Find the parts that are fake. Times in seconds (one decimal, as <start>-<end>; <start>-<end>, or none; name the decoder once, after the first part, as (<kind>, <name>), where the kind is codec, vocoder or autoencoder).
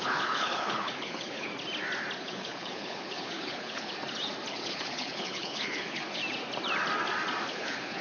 0.0-1.5 (codec, HILCodec); 2.2-3.9; 4.5-6.2; 7.5-8.0